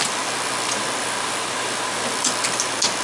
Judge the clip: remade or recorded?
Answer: recorded